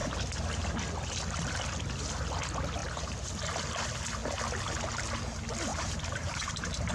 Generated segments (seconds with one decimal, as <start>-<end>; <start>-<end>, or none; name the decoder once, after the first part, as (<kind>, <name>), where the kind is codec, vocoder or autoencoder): 2.8-3.3 (vocoder, BigVGAN v2); 5.7-6.9